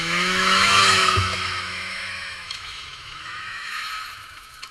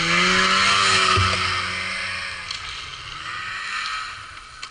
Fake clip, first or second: first